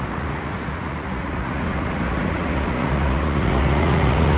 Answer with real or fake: fake